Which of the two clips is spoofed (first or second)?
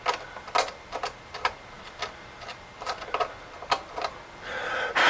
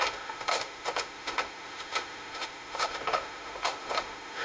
second